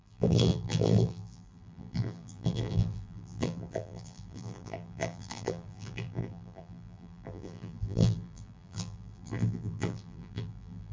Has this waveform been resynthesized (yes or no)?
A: yes